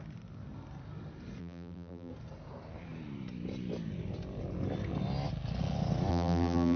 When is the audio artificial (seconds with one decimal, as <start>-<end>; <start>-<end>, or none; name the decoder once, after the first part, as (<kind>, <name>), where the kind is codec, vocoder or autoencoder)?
1.4-2.1 (vocoder, BigVGAN v2); 6.1-6.8